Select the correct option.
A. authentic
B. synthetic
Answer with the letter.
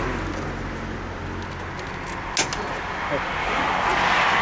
A